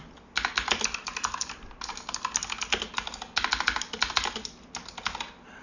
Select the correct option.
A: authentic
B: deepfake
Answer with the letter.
A